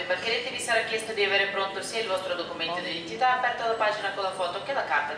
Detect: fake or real real